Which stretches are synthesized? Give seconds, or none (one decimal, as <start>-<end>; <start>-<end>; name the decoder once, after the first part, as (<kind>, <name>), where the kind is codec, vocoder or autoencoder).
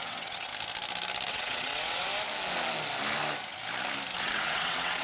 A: 0.0-0.5 (vocoder, WaveNeXt); 1.3-2.1; 4.2-5.0